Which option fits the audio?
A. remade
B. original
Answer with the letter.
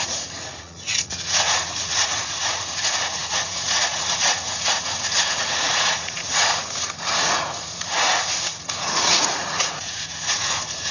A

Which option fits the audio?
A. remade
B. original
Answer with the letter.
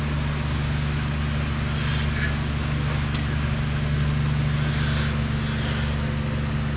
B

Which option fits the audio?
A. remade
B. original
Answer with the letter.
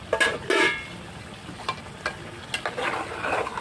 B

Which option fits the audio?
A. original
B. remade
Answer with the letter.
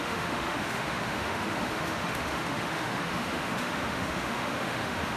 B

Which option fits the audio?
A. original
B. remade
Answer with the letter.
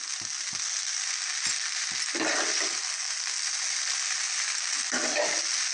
A